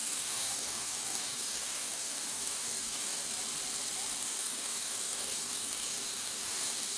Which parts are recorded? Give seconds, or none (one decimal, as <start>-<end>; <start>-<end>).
3.2-4.2